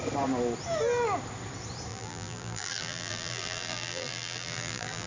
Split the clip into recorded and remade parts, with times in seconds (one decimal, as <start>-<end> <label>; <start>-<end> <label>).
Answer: 0.0-1.9 recorded; 1.9-5.1 remade